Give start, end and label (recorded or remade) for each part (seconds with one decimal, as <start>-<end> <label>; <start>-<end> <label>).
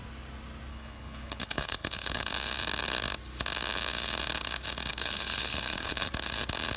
0.0-0.7 recorded; 0.7-2.3 remade; 2.3-4.9 recorded; 4.9-6.1 remade; 6.1-6.8 recorded